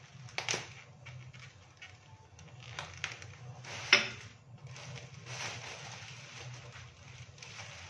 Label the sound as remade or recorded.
recorded